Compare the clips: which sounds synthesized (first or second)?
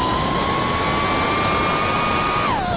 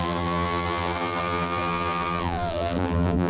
second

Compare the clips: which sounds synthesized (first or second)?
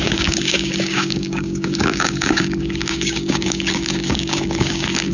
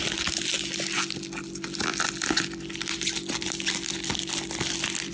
first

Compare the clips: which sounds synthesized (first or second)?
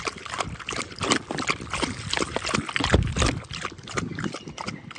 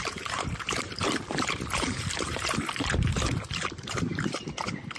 second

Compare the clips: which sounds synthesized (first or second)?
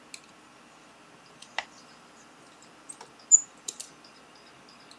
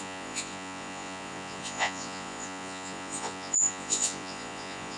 second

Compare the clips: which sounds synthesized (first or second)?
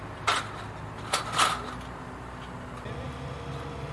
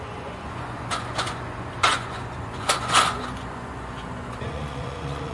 second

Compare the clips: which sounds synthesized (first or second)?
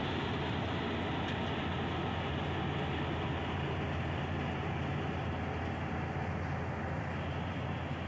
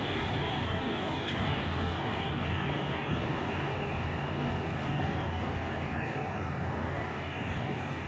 second